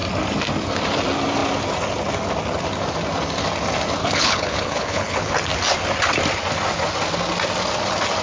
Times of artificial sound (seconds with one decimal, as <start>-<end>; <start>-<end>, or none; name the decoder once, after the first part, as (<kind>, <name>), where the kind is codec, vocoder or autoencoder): 4.0-5.3 (codec, HILCodec)